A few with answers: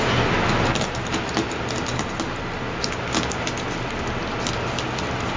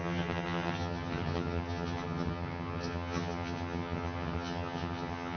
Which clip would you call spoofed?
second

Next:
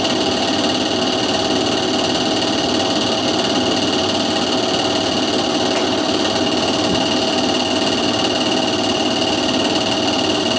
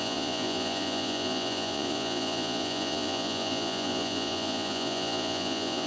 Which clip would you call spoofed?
second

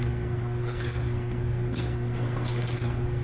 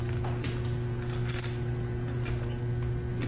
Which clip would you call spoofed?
first